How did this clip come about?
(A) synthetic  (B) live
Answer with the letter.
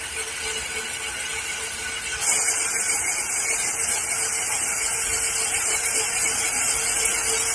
B